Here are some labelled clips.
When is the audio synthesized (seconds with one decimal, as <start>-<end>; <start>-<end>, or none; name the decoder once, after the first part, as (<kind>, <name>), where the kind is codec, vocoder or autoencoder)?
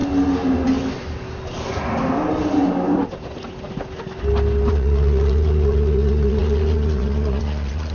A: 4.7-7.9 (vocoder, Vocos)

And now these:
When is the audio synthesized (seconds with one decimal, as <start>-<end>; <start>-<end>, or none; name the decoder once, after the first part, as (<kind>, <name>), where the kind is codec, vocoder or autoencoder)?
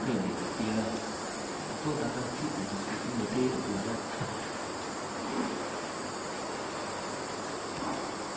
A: none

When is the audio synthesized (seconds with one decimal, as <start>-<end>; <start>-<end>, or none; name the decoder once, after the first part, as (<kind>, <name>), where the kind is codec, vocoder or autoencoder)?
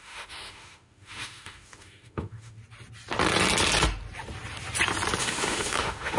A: 0.0-2.6 (autoencoder, DAC-VAE); 5.2-6.2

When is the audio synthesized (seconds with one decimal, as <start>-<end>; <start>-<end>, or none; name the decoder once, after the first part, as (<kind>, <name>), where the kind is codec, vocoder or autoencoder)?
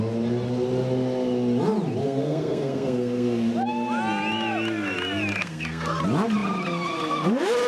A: 2.0-3.5 (codec, SNAC); 5.3-6.0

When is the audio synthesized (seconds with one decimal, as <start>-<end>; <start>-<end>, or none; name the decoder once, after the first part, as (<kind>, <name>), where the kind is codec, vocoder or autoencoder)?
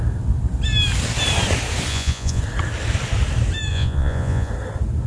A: 1.9-2.4 (vocoder, Vocos); 3.7-4.5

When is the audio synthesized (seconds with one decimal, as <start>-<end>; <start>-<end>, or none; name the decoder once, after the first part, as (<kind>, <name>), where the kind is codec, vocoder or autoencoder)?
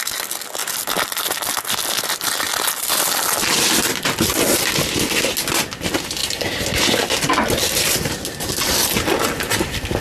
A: none